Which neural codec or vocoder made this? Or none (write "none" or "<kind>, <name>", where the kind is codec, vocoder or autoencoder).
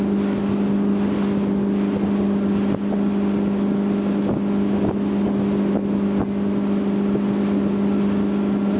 none